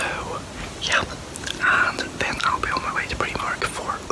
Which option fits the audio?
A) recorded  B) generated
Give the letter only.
A